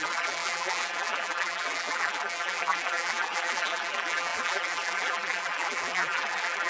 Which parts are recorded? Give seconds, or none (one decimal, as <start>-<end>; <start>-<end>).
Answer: none